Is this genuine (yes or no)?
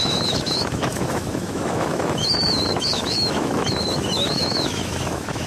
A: no